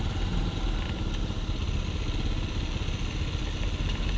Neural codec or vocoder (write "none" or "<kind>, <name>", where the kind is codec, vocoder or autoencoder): none